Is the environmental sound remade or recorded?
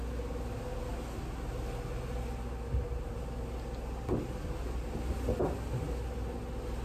recorded